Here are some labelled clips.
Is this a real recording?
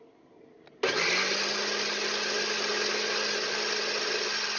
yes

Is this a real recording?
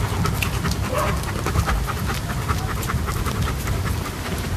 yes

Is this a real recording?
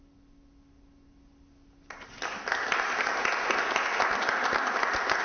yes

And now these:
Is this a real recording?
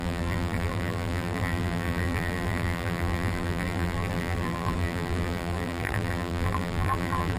no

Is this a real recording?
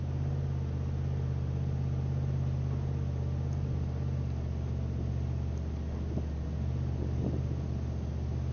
yes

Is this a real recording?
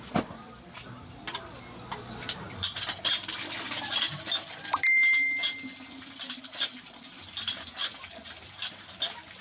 yes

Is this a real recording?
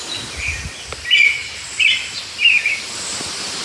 yes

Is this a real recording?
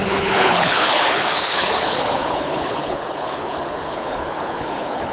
no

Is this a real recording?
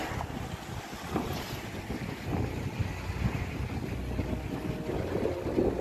yes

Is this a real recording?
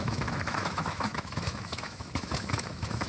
no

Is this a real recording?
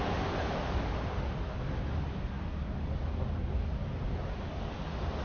yes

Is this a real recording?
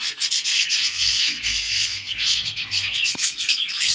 no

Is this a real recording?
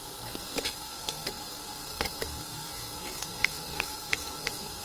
no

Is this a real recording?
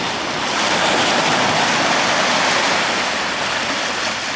yes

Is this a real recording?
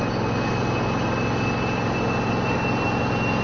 yes